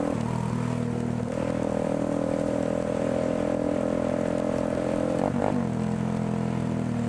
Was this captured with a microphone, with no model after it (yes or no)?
yes